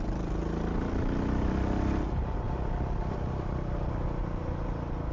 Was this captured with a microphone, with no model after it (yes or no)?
yes